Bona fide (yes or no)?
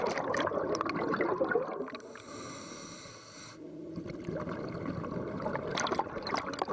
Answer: yes